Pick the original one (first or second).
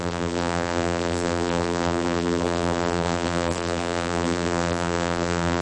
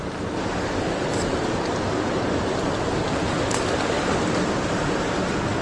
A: second